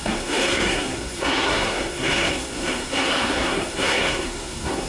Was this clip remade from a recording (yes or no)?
yes